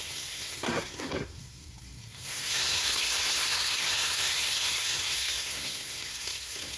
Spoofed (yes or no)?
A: yes